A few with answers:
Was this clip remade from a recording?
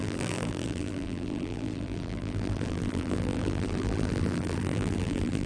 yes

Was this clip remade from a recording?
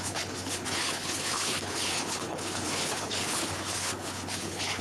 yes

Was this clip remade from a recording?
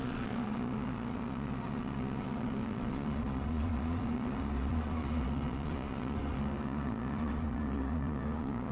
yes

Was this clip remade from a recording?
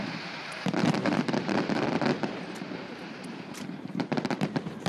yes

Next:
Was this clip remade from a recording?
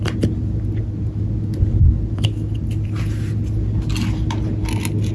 no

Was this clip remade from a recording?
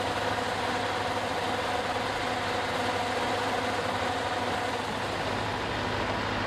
no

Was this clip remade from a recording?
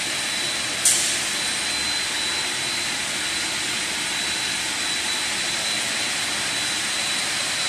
no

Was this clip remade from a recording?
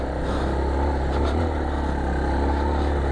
no